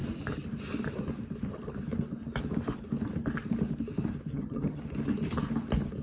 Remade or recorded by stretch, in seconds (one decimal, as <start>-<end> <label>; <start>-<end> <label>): 0.0-4.3 recorded; 4.3-4.8 remade; 4.8-6.0 recorded